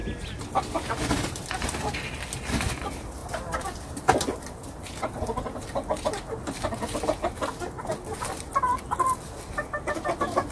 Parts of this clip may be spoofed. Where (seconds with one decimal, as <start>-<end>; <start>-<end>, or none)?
none